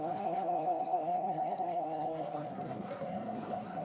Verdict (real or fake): fake